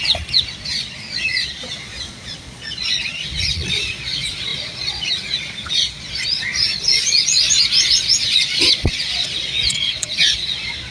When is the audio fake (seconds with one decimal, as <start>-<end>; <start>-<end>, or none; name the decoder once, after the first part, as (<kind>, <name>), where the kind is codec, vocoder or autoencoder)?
0.0-10.9 (vocoder, Vocos)